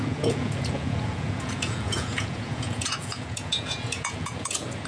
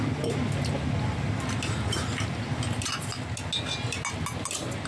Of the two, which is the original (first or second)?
second